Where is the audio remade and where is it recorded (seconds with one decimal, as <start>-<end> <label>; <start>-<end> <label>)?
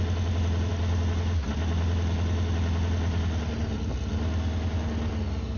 0.0-5.6 recorded